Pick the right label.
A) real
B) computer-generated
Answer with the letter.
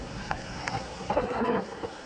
B